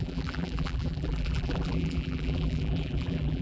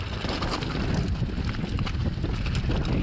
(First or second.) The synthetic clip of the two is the first